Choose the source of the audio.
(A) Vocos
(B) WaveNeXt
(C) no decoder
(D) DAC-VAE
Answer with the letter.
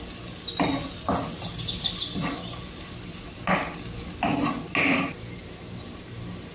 C